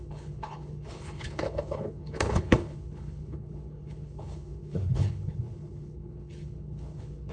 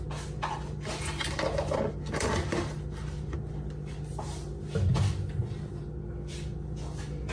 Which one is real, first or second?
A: second